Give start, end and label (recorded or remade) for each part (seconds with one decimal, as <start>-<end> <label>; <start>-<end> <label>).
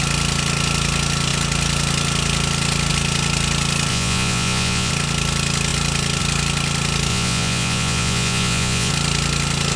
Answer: 0.0-3.9 recorded; 3.9-4.9 remade; 4.9-7.1 recorded; 7.1-8.9 remade; 8.9-9.8 recorded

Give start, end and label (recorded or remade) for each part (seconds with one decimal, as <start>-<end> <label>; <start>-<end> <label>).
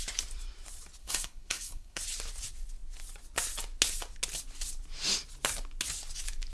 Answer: 0.0-1.0 recorded; 1.0-2.0 remade; 2.0-6.5 recorded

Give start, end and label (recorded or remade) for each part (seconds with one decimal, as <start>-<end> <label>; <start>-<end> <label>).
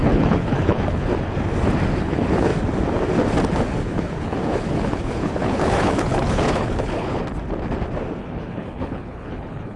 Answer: 0.0-1.1 remade; 1.1-2.0 recorded; 2.0-2.5 remade; 2.5-3.8 recorded; 3.8-7.2 remade; 7.2-8.2 recorded; 8.2-9.8 remade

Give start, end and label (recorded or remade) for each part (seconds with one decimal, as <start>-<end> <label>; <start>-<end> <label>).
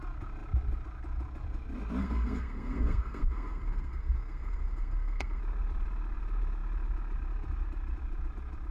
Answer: 0.0-2.0 recorded; 2.0-5.4 remade; 5.4-8.7 recorded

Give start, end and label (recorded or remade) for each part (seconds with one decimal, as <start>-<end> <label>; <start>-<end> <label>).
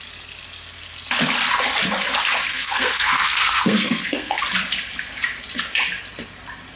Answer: 0.0-2.5 recorded; 2.5-4.4 remade; 4.4-6.8 recorded